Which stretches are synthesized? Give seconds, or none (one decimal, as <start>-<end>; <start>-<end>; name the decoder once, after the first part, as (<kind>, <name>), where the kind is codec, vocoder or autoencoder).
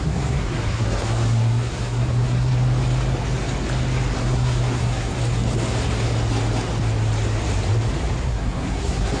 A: 0.0-2.5 (codec, SNAC); 4.2-5.1; 8.2-9.2